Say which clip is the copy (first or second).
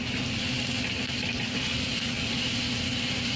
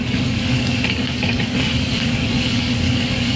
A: second